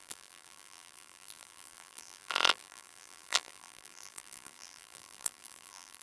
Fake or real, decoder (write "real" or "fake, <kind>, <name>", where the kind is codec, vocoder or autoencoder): fake, vocoder, BigVGAN v2